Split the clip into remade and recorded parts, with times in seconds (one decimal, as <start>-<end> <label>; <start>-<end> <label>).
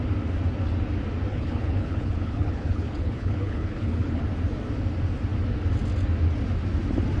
0.0-1.3 recorded; 1.3-4.2 remade; 4.2-7.2 recorded